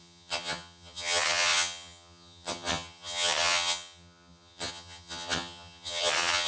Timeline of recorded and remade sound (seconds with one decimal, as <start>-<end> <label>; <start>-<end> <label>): 0.0-6.5 remade